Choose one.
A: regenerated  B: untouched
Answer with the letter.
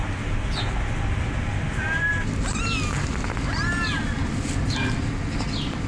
B